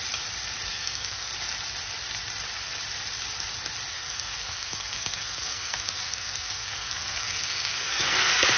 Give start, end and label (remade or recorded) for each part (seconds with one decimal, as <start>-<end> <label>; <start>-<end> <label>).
0.0-0.7 recorded; 0.7-1.3 remade; 1.3-3.9 recorded; 3.9-8.6 remade

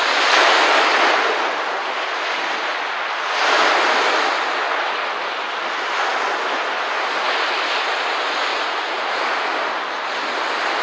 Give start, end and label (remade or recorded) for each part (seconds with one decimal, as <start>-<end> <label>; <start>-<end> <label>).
0.0-8.5 recorded; 8.5-9.5 remade; 9.5-10.8 recorded